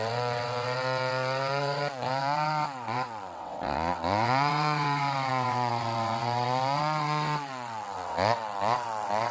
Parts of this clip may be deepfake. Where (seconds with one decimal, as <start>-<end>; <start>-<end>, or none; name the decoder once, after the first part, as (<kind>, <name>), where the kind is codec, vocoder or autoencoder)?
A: 0.0-9.3 (vocoder, WaveNeXt)